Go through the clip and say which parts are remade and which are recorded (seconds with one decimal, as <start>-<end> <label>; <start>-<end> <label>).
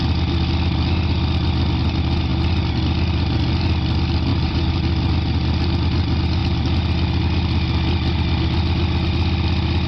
0.0-4.3 recorded; 4.3-4.8 remade; 4.8-9.9 recorded